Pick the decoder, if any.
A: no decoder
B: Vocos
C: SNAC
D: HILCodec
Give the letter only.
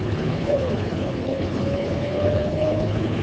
D